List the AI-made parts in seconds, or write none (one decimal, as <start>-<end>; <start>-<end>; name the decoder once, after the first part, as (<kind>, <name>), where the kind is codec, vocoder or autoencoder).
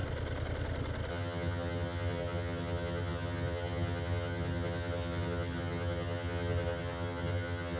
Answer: 1.1-7.8 (vocoder, HiFi-GAN)